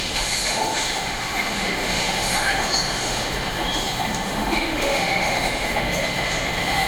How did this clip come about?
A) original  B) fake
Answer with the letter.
B